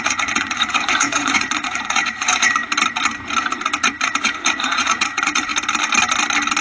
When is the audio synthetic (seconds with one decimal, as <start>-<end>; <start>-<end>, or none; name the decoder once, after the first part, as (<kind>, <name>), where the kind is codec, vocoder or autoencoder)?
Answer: 0.0-2.6 (vocoder, Vocos); 3.9-5.5